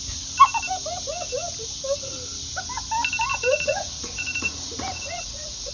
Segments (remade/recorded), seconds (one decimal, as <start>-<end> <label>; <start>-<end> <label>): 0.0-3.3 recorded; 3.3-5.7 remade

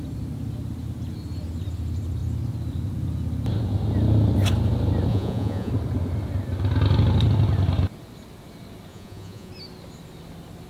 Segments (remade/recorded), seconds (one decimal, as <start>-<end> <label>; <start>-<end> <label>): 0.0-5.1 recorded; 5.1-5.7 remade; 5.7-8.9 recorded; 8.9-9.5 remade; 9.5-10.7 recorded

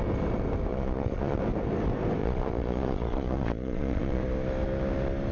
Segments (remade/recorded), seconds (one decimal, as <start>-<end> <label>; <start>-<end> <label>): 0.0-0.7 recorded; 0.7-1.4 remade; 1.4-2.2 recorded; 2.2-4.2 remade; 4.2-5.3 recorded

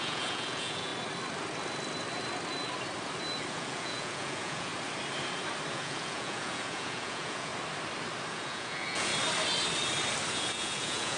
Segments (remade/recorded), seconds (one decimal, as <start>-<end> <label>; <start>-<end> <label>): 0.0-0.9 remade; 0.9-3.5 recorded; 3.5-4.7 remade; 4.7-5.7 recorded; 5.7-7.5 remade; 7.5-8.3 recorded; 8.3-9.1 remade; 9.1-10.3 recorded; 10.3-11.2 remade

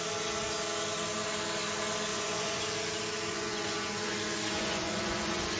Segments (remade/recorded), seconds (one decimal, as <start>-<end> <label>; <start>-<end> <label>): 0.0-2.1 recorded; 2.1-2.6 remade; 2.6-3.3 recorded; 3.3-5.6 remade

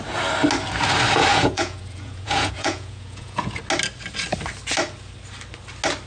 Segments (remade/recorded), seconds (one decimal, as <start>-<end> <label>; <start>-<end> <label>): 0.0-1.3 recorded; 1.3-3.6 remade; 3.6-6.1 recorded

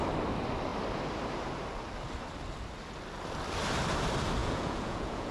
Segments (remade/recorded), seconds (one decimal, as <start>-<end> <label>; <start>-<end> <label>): 0.0-4.4 recorded; 4.4-5.3 remade